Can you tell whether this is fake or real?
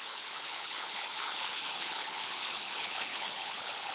fake